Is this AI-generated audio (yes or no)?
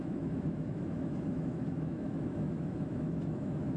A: yes